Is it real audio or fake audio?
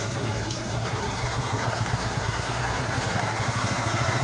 fake